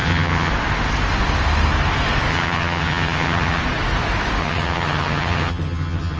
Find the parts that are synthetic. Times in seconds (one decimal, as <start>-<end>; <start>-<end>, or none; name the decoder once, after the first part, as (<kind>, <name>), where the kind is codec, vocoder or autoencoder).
0.0-0.5 (vocoder, HiFi-GAN); 2.3-3.6; 4.4-6.2